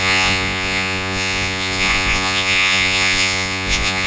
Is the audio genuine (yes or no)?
no